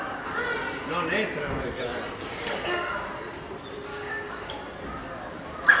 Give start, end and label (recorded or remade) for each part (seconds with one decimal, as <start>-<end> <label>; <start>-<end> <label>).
0.0-2.3 recorded; 2.3-3.1 remade; 3.1-3.9 recorded; 3.9-4.5 remade; 4.5-5.8 recorded